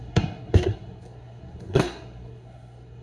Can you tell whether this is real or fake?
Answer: fake